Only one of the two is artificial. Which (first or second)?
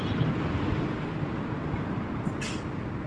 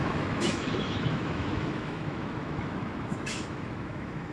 second